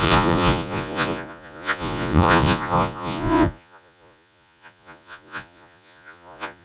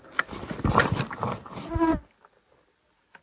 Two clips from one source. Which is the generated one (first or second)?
first